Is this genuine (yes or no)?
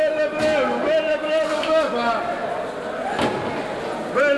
yes